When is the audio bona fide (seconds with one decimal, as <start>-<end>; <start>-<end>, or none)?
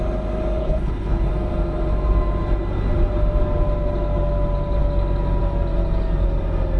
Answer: 0.0-0.6; 1.3-6.8